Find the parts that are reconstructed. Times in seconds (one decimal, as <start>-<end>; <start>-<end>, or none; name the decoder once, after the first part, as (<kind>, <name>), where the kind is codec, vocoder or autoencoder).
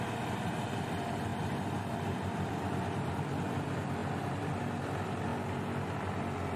1.3-3.1 (vocoder, BigVGAN v2)